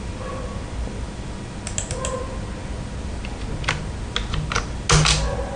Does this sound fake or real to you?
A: real